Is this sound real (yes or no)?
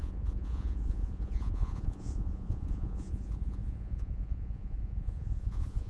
no